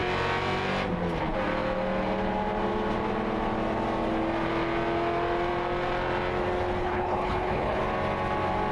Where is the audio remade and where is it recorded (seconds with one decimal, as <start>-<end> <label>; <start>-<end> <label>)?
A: 0.0-6.8 recorded; 6.8-7.8 remade; 7.8-8.7 recorded